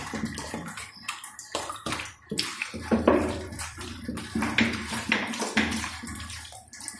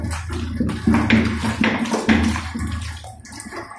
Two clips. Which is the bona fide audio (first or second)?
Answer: second